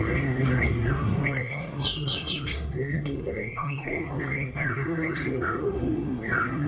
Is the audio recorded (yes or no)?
no